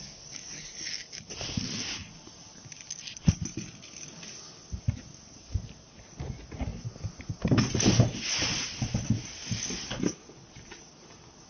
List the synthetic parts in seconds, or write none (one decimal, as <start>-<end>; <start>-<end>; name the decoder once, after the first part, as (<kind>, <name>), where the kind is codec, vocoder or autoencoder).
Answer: none